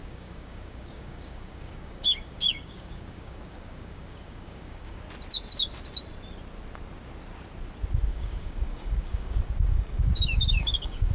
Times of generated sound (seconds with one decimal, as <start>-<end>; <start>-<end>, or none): 0.0-5.0; 8.1-11.1